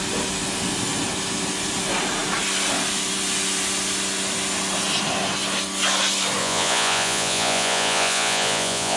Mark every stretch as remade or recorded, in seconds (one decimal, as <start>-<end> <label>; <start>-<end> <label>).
0.0-6.4 recorded; 6.4-9.0 remade